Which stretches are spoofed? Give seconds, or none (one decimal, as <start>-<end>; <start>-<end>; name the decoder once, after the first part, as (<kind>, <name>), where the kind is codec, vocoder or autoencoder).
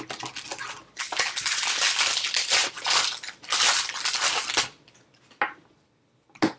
0.5-4.5 (vocoder, BigVGAN v2)